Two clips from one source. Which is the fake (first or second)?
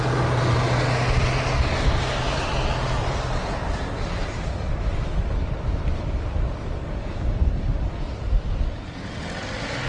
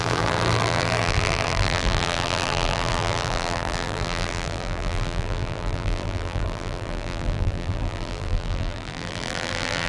second